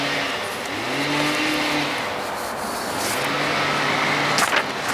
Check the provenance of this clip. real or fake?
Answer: real